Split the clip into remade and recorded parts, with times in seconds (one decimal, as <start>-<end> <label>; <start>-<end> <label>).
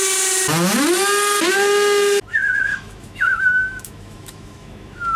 0.0-2.7 recorded; 2.7-5.2 remade